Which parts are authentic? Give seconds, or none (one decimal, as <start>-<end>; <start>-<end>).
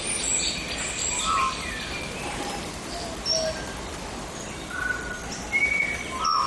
0.0-6.5